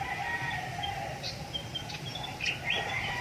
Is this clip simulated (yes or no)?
no